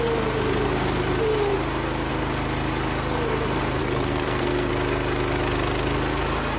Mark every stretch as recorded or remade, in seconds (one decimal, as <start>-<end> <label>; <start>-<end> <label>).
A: 0.0-3.8 recorded; 3.8-4.7 remade; 4.7-6.6 recorded